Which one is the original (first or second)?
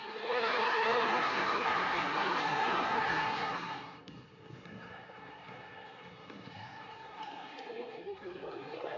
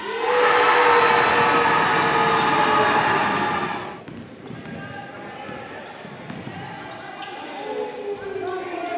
second